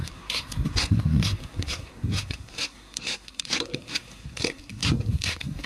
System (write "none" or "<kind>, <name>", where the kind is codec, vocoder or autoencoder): codec, SNAC